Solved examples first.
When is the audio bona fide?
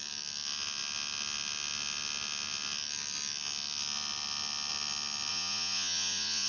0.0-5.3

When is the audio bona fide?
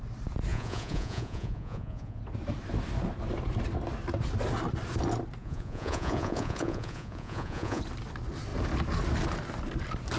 0.0-0.5; 2.2-5.4; 7.8-10.2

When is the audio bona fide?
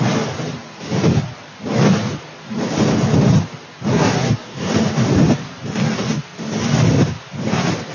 0.0-3.9; 4.7-7.9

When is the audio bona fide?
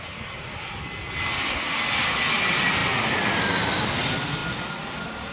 0.0-2.8; 3.8-5.3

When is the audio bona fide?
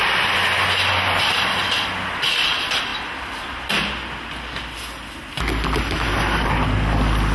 0.0-7.3